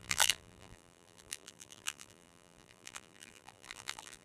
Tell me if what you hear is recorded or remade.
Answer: remade